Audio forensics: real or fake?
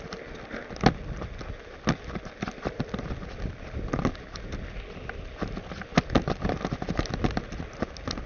real